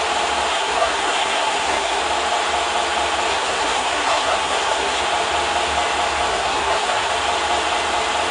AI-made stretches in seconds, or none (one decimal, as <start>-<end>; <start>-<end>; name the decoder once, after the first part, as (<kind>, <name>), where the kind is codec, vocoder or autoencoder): 0.5-2.0 (codec, SNAC); 3.3-5.0; 6.3-7.1